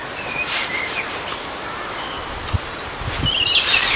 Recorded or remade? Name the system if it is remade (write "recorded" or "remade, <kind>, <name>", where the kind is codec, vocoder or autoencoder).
recorded